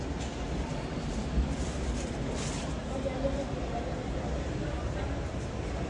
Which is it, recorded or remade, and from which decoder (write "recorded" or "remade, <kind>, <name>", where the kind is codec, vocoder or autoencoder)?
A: remade, vocoder, BigVGAN v2